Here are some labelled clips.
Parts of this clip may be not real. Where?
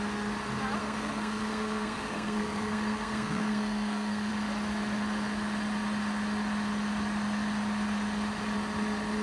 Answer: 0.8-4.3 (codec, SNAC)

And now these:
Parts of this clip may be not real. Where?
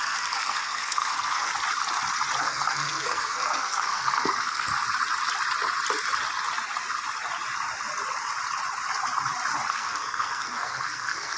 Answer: 0.0-1.5 (codec, SNAC); 2.4-4.7; 9.7-11.4